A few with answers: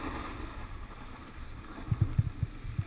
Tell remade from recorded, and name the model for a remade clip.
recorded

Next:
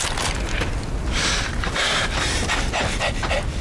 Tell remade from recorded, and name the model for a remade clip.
recorded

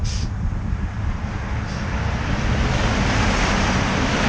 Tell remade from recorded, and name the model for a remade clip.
recorded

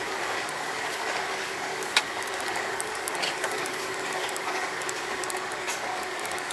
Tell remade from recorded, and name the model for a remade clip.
remade, codec, DAC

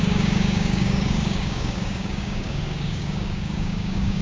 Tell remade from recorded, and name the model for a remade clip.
remade, codec, DAC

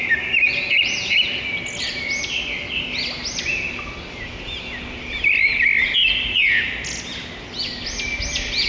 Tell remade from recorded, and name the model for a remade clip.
recorded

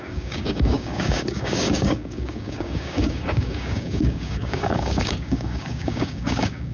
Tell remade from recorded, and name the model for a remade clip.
remade, codec, DAC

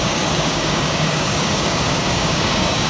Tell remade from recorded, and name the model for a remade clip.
remade, codec, DAC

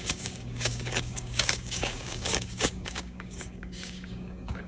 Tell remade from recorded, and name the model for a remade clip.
remade, codec, DAC